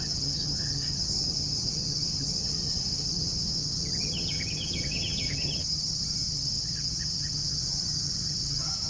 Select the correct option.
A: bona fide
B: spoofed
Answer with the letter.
B